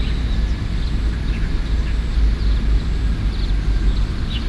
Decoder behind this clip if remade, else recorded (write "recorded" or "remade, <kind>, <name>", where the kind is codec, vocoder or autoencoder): recorded